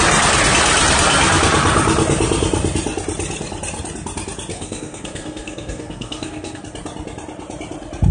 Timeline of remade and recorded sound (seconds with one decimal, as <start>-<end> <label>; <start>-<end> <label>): 0.0-4.5 recorded; 4.5-6.6 remade; 6.6-8.1 recorded